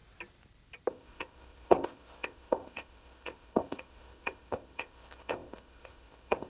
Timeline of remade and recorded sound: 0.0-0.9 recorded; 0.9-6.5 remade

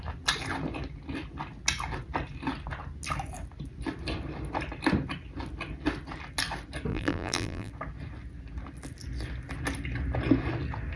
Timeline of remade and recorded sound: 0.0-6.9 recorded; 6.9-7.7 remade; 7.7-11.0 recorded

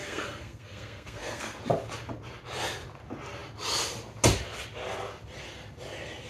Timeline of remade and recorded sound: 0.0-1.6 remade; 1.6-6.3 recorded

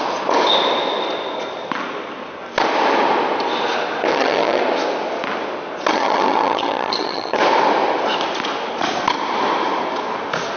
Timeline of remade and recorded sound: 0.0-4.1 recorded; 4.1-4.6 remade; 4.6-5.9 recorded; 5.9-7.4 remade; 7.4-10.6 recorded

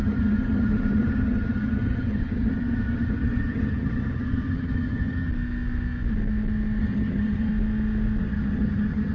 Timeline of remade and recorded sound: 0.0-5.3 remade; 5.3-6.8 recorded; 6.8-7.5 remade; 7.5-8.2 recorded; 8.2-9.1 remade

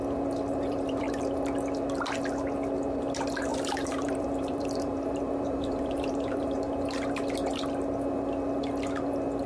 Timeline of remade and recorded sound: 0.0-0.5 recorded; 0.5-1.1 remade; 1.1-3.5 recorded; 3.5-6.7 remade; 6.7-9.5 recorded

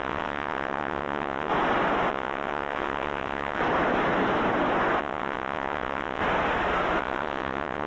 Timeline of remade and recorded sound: 0.0-1.5 remade; 1.5-2.1 recorded; 2.1-3.6 remade; 3.6-5.0 recorded; 5.0-6.2 remade; 6.2-7.0 recorded; 7.0-7.9 remade

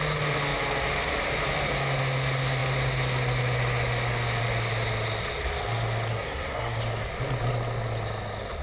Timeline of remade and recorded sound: 0.0-6.1 recorded; 6.1-6.8 remade; 6.8-8.6 recorded